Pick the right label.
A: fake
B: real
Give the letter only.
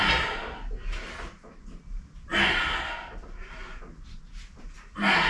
B